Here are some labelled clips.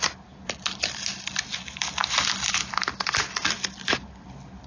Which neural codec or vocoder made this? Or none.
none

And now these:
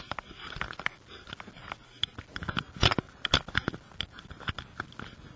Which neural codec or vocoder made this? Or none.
none